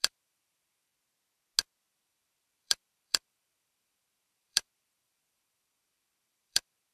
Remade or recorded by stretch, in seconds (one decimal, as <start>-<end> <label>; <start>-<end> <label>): 0.0-0.9 remade; 0.9-1.9 recorded; 1.9-6.9 remade